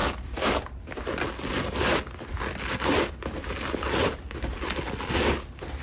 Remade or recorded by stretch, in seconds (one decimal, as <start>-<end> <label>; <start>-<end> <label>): 0.0-5.8 recorded